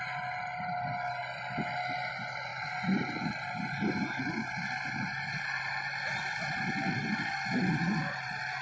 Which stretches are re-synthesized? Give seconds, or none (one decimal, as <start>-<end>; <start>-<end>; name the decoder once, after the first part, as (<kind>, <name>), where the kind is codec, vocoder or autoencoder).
none